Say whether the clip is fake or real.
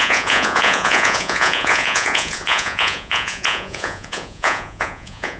fake